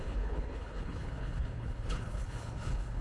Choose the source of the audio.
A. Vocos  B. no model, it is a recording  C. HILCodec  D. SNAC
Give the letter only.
C